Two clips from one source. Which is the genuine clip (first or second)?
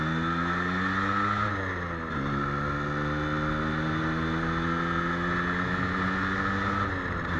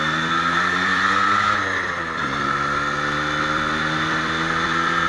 first